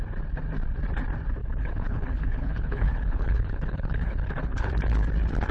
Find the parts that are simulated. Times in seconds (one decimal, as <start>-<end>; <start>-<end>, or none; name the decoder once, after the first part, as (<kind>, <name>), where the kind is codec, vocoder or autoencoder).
1.4-4.7 (codec, HILCodec)